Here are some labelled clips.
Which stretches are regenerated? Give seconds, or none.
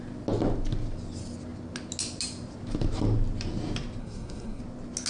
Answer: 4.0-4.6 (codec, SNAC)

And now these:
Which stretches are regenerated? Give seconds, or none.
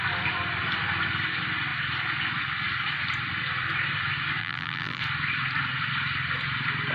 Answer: 4.4-5.0 (vocoder, BigVGAN v2)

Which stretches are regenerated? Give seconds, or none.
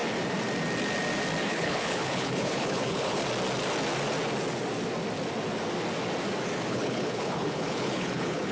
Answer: 1.4-3.2 (codec, HILCodec); 6.7-8.5